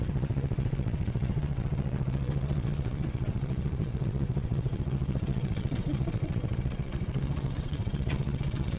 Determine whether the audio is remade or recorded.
remade